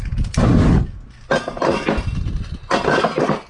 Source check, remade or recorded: recorded